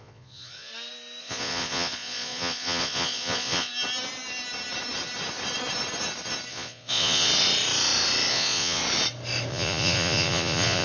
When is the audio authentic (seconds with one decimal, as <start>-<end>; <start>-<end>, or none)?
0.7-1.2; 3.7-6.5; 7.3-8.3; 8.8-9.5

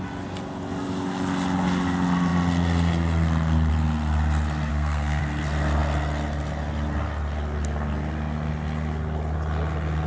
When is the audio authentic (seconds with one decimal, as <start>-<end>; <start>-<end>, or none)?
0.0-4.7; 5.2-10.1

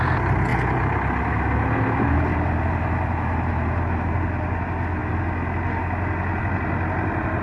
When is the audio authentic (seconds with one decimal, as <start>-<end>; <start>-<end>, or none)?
0.0-7.4

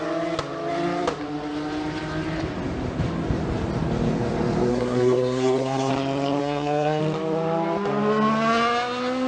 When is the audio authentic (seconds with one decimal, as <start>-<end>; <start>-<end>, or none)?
0.0-4.7; 5.9-6.4; 7.0-9.3

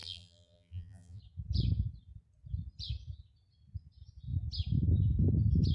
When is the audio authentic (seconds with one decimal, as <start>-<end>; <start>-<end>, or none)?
1.2-5.7